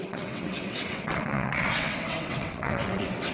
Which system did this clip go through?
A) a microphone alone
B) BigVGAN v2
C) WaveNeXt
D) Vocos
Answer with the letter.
C